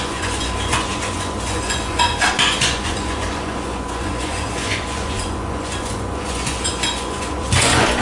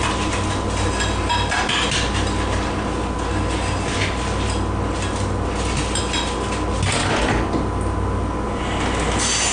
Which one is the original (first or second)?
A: second